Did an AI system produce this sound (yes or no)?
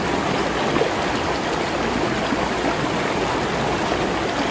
no